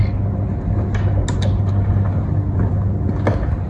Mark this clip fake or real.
real